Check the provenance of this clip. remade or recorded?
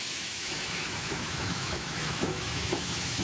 remade